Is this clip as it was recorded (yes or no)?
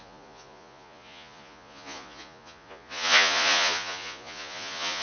no